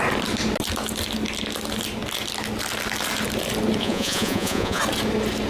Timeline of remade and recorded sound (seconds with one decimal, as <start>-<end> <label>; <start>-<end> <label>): 0.0-3.8 recorded; 3.8-4.8 remade; 4.8-5.5 recorded